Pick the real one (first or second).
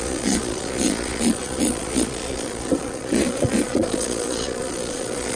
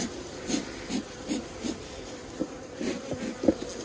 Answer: second